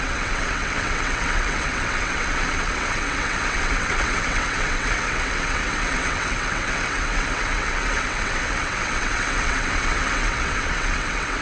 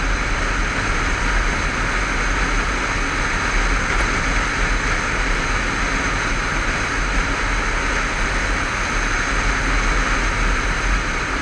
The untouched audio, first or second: second